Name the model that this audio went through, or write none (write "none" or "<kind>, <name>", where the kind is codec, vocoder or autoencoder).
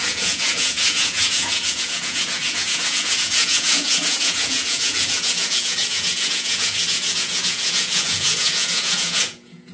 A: vocoder, Vocos